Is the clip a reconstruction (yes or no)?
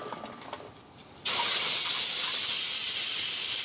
no